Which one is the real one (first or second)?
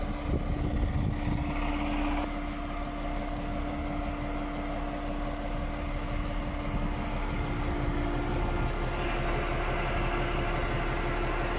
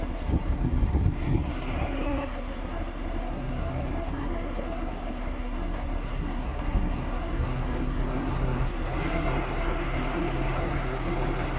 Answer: first